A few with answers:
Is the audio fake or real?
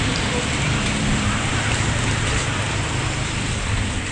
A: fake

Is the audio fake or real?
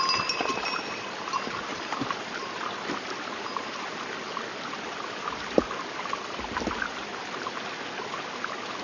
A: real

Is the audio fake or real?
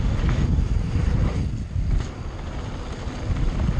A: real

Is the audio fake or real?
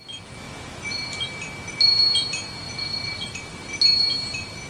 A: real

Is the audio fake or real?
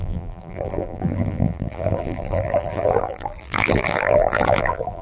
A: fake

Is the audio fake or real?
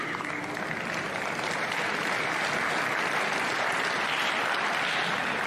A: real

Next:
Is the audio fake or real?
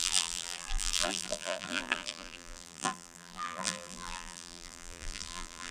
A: fake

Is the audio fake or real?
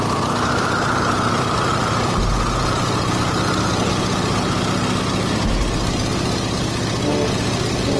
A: real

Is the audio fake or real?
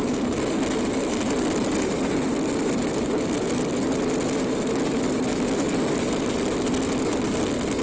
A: real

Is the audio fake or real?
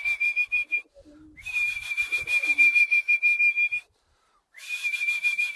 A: fake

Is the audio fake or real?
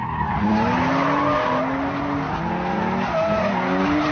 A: real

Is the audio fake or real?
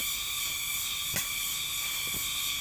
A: real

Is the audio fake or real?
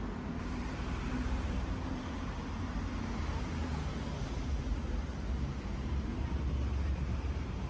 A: fake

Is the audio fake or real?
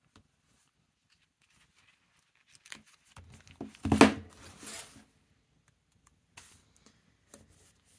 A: real